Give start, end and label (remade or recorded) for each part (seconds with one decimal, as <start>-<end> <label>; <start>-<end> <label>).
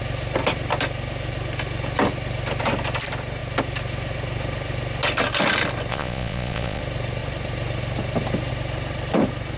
0.0-5.9 recorded; 5.9-6.8 remade; 6.8-9.6 recorded